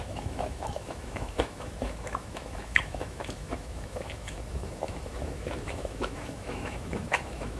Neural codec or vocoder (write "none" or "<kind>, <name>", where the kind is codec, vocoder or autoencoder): autoencoder, DAC-VAE